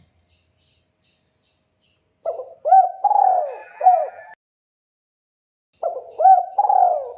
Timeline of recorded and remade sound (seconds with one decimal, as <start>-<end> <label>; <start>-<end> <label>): 0.0-3.6 recorded; 3.6-4.3 remade; 4.3-7.2 recorded